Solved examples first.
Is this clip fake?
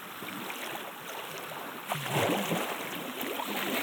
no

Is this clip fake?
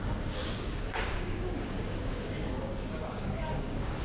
yes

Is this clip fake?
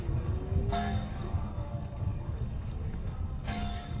yes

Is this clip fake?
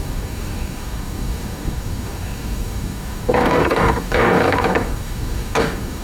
yes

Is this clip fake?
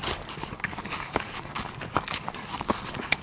yes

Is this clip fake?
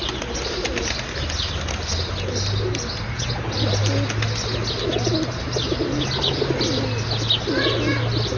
no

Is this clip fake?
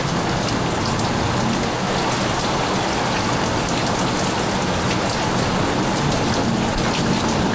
no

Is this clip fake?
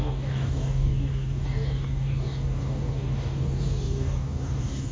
yes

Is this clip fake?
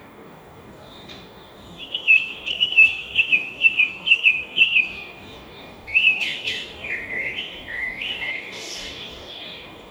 yes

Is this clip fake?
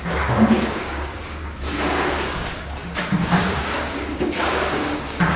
yes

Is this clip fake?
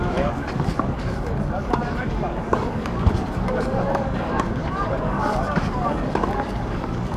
yes